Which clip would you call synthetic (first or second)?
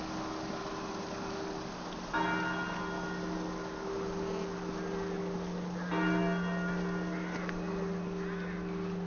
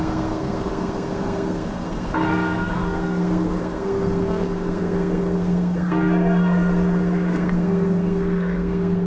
second